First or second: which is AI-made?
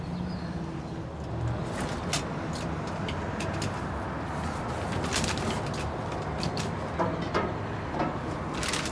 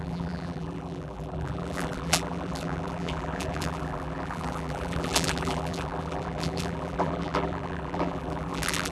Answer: second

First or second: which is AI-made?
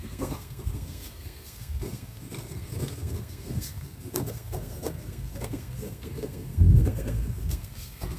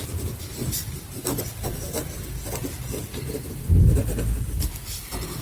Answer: first